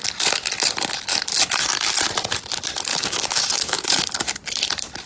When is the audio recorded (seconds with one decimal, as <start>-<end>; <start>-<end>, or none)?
0.0-2.9; 4.0-5.1